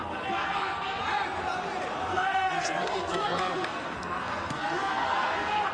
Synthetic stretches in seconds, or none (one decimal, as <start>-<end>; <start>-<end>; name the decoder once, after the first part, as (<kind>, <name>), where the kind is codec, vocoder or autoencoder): 0.0-1.0 (codec, SNAC); 2.1-5.7